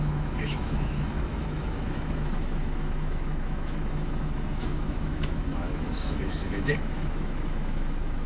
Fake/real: fake